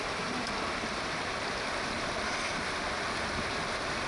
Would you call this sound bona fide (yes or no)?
yes